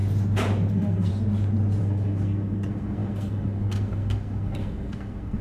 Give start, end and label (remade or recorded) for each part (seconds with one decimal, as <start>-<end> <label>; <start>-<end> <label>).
0.0-0.7 recorded; 0.7-1.1 remade; 1.1-1.8 recorded; 1.8-5.4 remade